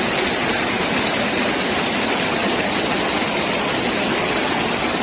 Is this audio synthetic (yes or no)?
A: no